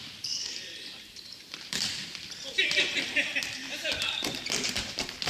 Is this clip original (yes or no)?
no